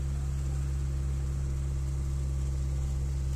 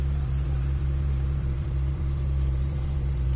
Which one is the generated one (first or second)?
second